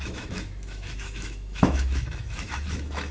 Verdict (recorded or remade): remade